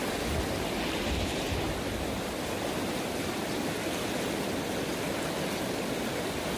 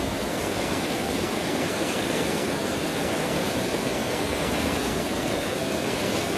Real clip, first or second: first